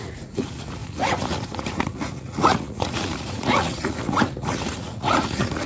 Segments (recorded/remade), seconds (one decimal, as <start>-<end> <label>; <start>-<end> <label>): 0.0-5.7 remade